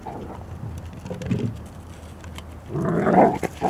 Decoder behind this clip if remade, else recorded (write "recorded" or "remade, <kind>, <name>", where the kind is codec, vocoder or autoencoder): recorded